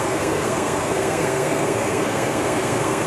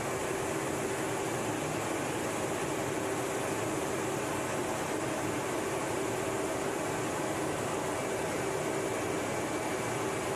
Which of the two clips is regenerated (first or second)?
first